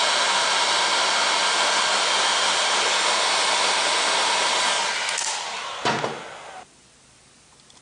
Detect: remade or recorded remade